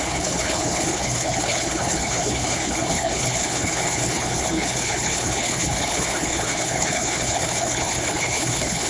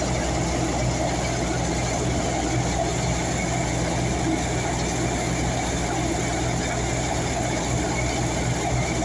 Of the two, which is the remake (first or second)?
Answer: first